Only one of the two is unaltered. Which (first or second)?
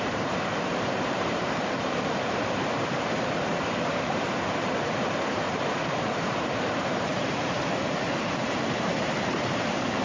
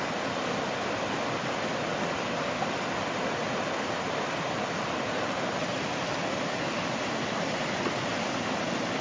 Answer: second